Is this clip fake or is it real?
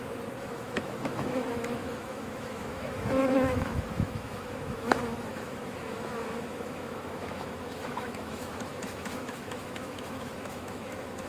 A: fake